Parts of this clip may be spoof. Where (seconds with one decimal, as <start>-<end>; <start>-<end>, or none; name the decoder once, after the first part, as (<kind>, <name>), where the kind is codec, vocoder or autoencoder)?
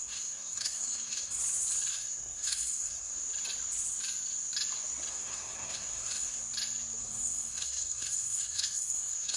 0.0-1.4 (codec, SNAC); 1.9-3.1; 5.1-6.4; 7.0-9.4